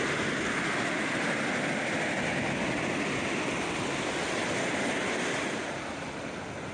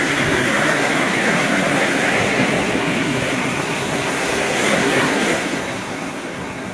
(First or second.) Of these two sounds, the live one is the first